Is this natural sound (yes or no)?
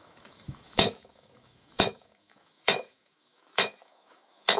no